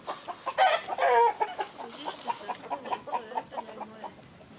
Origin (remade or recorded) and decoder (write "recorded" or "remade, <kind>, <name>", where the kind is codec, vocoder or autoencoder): recorded